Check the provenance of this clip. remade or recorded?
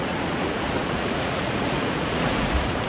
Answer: remade